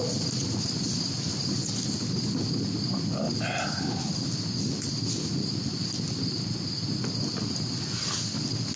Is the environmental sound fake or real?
real